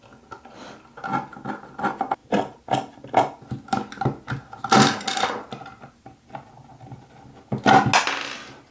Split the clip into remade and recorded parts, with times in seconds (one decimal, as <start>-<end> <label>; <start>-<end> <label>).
0.0-8.7 recorded

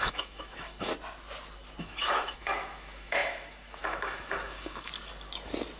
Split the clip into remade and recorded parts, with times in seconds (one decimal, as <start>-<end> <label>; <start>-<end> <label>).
0.0-0.9 remade; 0.9-1.8 recorded; 1.8-4.9 remade; 4.9-5.8 recorded

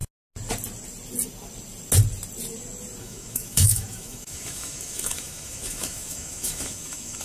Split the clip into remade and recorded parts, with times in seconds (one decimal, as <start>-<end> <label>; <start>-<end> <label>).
0.0-3.0 recorded; 3.0-7.2 remade

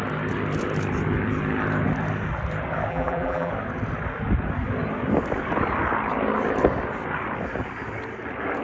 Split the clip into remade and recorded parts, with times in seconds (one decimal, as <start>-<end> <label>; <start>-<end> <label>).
0.0-2.9 recorded; 2.9-3.5 remade; 3.5-8.6 recorded